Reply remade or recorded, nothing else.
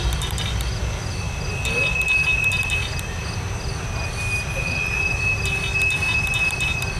recorded